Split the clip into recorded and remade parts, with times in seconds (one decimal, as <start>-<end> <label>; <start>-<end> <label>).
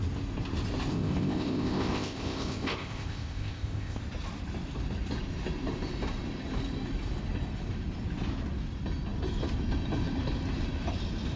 0.0-0.9 recorded; 0.9-4.0 remade; 4.0-11.4 recorded